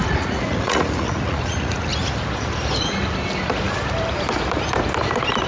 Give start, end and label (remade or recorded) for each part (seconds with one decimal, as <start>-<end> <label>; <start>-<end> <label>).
0.0-1.9 remade; 1.9-5.5 recorded